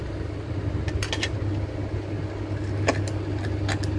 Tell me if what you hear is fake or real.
real